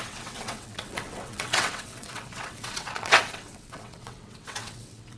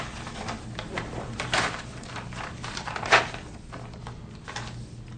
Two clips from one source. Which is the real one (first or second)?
second